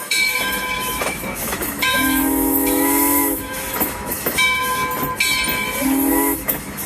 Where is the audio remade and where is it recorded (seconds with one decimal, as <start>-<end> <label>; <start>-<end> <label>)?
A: 0.0-4.8 remade; 4.8-6.1 recorded; 6.1-6.9 remade